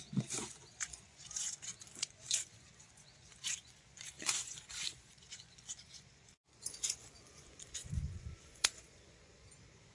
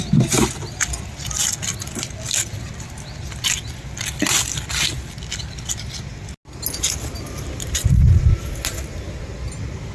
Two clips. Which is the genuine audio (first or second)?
second